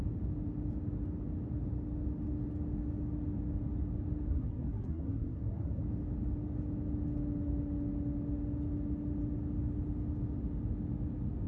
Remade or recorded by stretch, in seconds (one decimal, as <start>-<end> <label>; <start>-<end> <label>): 0.0-4.3 recorded; 4.3-5.8 remade; 5.8-11.5 recorded

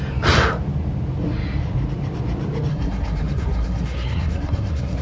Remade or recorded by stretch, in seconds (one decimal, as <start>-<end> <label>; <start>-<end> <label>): 0.0-2.7 recorded; 2.7-5.0 remade

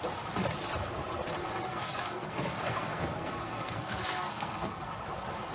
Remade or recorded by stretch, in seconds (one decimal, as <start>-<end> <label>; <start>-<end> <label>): 0.0-1.7 recorded; 1.7-4.9 remade; 4.9-5.5 recorded

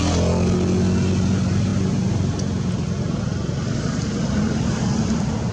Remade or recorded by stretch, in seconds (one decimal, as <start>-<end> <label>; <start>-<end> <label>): 0.0-5.5 recorded

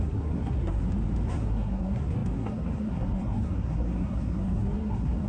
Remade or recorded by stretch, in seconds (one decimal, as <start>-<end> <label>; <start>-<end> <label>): 0.0-0.8 remade; 0.8-1.3 recorded; 1.3-5.3 remade